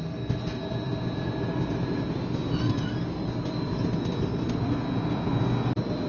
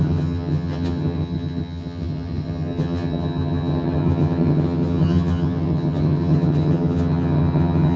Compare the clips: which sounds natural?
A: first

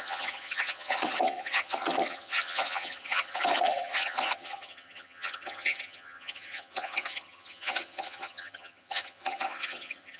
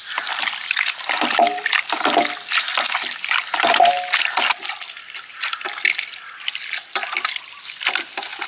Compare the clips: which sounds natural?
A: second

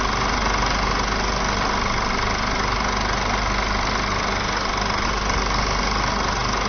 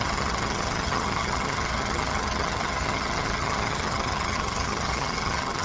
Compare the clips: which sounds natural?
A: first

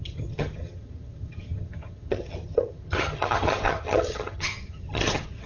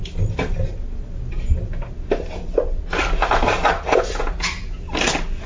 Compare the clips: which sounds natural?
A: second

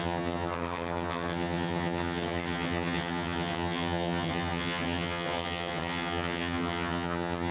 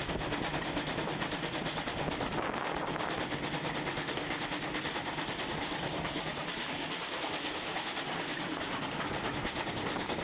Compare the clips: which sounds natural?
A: second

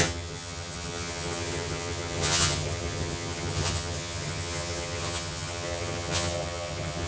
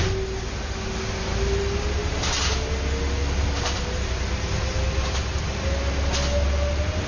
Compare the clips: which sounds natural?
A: second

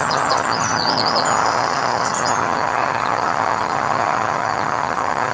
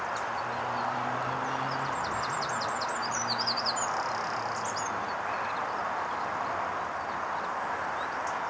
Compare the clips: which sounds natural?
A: second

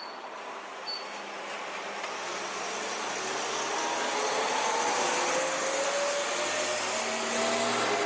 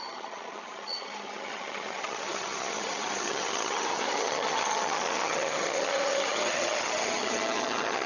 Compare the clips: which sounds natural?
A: first